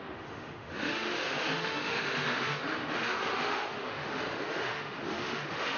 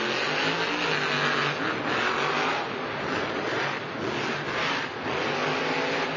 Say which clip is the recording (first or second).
second